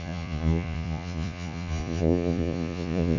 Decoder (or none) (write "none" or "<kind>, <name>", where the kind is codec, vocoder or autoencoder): vocoder, Vocos